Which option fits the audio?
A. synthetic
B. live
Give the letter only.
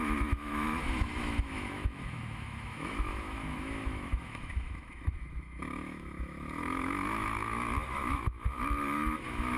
A